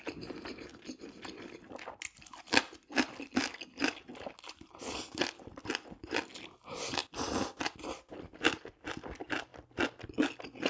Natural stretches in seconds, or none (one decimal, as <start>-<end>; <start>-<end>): 0.0-10.7